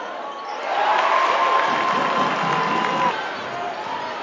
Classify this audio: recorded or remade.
recorded